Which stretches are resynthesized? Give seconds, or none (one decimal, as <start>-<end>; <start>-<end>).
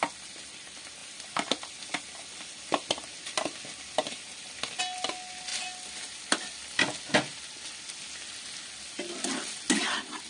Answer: none